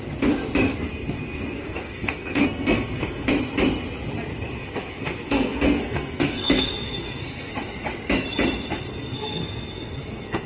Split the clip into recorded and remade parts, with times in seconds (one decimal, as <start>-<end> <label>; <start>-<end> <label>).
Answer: 0.0-0.7 recorded; 0.7-3.3 remade; 3.3-4.3 recorded; 4.3-7.5 remade; 7.5-8.9 recorded; 8.9-10.5 remade